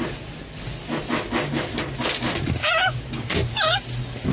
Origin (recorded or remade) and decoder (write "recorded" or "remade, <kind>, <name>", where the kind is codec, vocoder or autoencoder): recorded